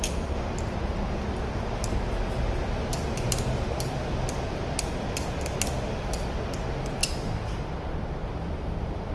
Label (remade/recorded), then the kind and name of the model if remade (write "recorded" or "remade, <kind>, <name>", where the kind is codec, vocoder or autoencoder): recorded